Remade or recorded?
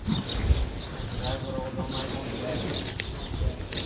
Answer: recorded